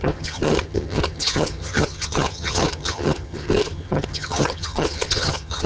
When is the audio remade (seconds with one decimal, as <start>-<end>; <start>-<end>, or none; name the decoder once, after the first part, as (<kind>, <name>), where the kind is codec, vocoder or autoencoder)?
0.0-5.7 (vocoder, HiFi-GAN)